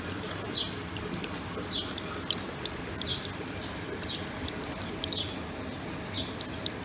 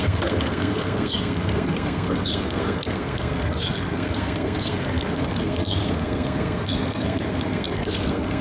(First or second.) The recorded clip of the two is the first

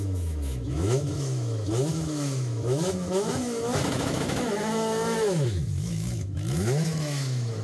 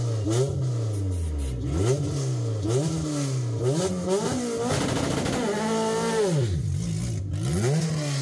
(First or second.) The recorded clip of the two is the second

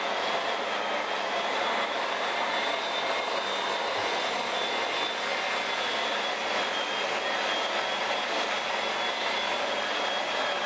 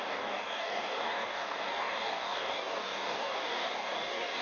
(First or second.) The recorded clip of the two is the first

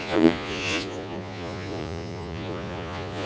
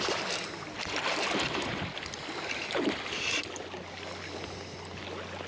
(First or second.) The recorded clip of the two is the second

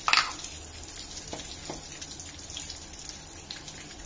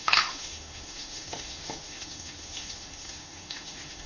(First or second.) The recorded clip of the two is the first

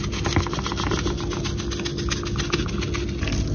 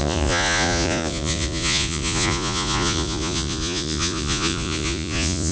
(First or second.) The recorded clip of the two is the first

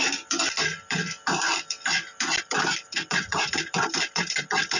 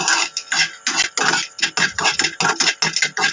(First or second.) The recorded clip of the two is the second